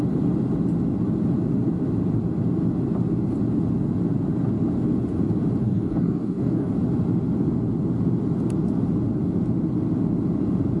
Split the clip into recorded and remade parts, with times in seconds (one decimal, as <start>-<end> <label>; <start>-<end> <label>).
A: 0.0-5.6 recorded; 5.6-6.7 remade; 6.7-10.8 recorded